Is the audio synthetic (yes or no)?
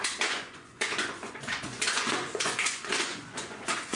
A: yes